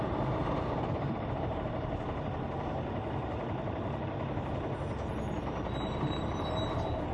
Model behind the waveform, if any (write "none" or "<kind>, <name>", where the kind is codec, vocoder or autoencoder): vocoder, BigVGAN v2